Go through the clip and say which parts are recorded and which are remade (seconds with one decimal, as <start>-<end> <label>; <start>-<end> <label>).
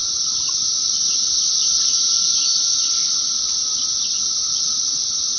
0.0-5.4 recorded